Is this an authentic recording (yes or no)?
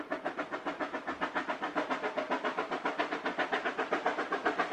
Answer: yes